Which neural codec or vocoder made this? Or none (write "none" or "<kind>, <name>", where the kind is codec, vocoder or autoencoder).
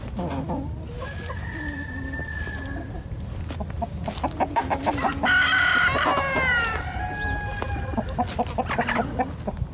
none